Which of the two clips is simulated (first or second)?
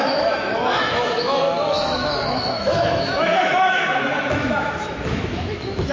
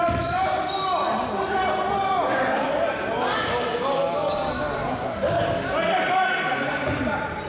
first